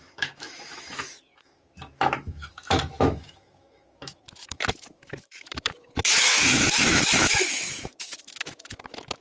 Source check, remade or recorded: remade